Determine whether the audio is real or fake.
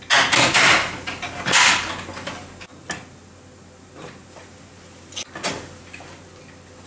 real